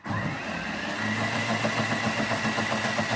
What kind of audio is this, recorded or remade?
recorded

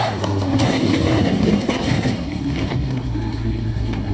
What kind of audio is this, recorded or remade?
remade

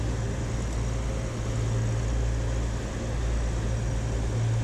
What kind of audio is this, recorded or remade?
recorded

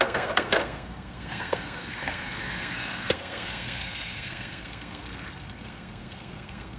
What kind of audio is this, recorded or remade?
remade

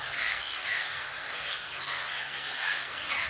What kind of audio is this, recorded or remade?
remade